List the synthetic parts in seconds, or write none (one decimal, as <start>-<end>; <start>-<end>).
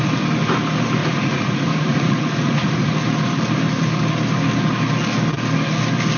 1.0-2.9